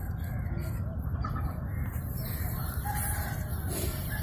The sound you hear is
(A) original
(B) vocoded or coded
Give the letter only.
A